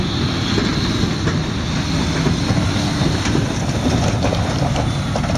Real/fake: real